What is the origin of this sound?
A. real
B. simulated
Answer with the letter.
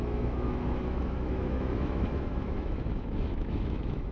B